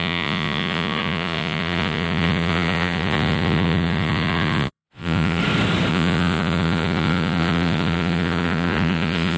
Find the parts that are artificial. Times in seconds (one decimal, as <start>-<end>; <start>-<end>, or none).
0.0-5.4; 5.9-9.4